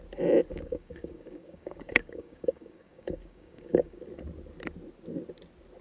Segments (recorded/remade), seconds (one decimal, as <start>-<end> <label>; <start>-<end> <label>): 0.0-0.5 recorded; 0.5-4.0 remade; 4.0-5.8 recorded